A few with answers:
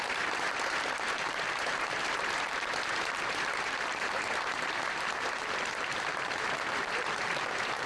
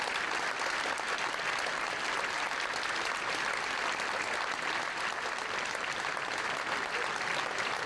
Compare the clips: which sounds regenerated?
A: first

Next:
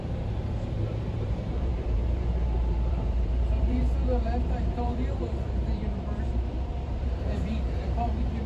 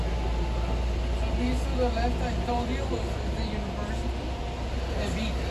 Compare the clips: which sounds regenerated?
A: first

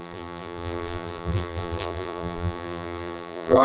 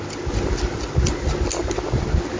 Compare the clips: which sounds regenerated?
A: first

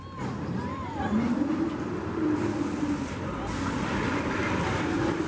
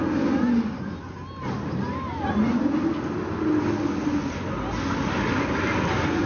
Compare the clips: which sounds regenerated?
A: first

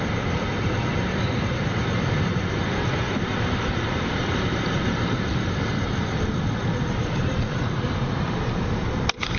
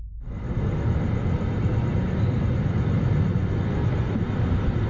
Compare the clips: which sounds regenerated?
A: first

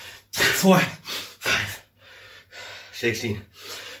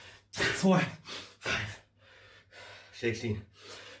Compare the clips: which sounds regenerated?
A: first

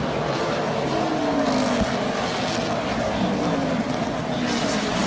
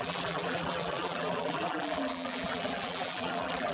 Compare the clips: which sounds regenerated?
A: second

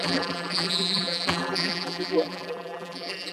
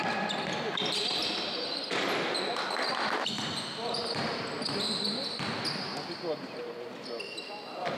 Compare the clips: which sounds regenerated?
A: first